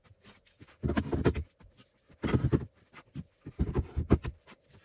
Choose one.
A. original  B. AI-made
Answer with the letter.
A